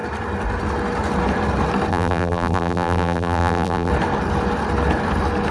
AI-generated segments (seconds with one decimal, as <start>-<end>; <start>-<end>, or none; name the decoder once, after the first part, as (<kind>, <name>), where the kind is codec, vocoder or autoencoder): 1.9-3.9 (vocoder, BigVGAN v2)

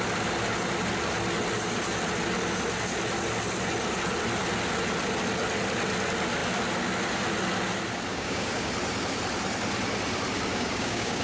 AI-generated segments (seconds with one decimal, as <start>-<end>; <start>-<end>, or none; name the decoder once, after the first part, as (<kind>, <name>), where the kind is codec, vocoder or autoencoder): 8.1-8.7 (codec, DAC); 10.5-11.2

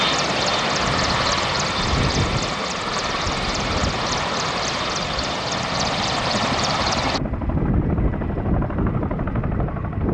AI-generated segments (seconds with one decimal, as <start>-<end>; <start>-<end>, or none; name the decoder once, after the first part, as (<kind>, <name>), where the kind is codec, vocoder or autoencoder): 0.5-2.0 (vocoder, BigVGAN v2); 3.8-8.0

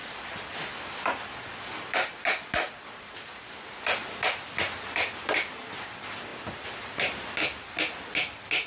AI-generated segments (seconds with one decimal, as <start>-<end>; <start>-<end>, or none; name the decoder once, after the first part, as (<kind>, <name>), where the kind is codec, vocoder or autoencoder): none

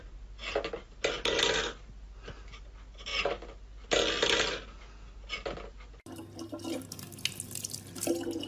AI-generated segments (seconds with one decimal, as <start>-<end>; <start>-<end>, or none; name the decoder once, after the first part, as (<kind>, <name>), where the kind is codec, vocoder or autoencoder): none

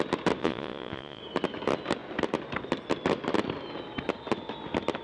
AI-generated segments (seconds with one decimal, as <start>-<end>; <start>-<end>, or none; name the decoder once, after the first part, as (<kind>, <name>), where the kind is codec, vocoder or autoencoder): 0.4-1.2 (vocoder, Vocos)

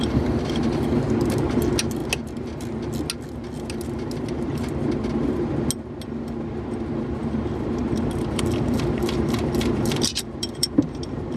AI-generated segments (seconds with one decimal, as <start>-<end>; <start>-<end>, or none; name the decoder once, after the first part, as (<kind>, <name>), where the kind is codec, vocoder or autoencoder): 7.2-11.4 (vocoder, BigVGAN v2)

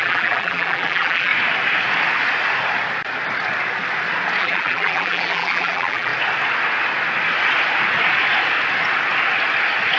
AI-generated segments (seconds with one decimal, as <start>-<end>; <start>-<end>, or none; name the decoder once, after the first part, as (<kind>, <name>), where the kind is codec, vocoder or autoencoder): 0.0-1.3 (vocoder, BigVGAN v2); 4.4-6.1